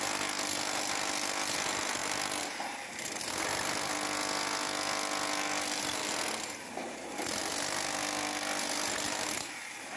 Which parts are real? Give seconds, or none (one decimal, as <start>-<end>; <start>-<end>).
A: 0.0-6.8; 7.4-10.0